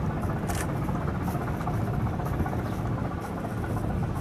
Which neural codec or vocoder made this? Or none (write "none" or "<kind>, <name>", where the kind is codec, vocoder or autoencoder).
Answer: none